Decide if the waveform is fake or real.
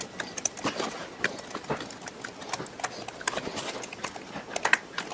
real